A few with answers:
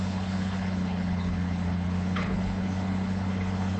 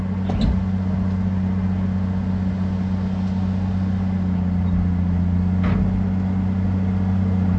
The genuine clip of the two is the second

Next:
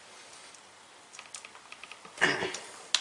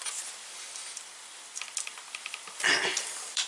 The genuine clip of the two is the first